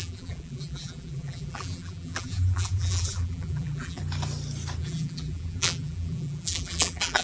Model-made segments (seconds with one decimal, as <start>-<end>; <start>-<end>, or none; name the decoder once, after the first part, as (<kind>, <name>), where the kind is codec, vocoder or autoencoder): 0.0-4.0 (vocoder, BigVGAN v2); 4.8-7.2